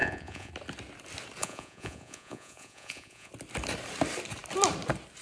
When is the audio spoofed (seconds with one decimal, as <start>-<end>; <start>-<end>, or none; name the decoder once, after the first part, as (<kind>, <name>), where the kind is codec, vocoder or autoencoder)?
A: 0.0-0.5 (vocoder, Vocos); 1.4-3.3